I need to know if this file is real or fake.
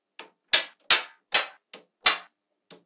real